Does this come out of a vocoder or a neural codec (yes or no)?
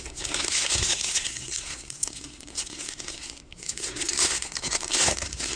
yes